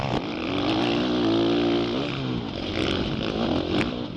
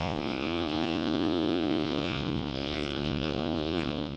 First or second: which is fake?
second